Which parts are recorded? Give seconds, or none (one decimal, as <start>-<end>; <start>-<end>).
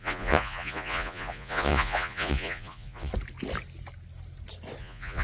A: 3.1-4.8